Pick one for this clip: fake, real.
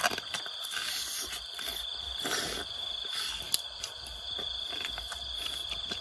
real